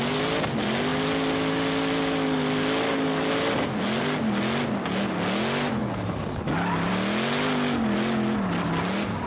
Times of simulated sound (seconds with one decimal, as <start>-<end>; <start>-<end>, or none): none